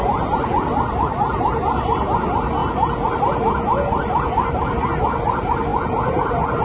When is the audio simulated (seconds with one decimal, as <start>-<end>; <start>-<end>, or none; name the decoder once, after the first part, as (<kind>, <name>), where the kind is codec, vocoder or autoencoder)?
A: none